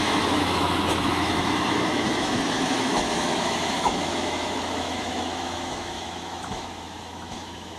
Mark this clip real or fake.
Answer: fake